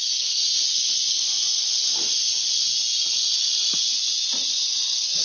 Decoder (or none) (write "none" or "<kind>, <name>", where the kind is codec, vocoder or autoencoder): none